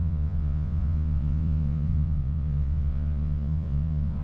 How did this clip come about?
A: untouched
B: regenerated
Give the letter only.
B